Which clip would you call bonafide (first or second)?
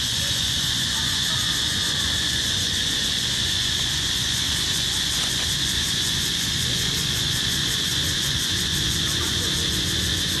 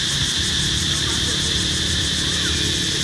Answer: second